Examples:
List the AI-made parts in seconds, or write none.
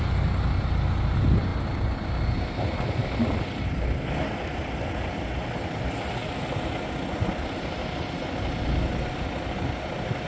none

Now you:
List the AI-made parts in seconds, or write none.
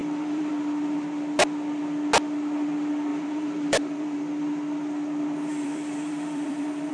0.0-0.5 (vocoder, BigVGAN v2); 3.1-4.2; 5.5-6.9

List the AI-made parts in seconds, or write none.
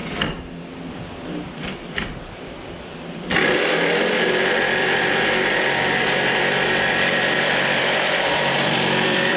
0.9-9.4 (vocoder, BigVGAN v2)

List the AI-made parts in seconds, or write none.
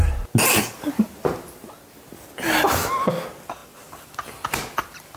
3.6-5.2 (vocoder, BigVGAN v2)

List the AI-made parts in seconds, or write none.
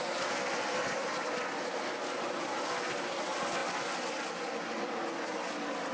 none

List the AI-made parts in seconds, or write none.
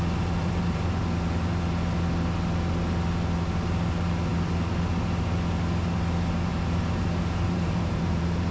0.4-1.0 (vocoder, BigVGAN v2); 6.5-8.5